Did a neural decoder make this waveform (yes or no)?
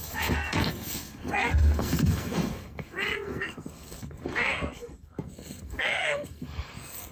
yes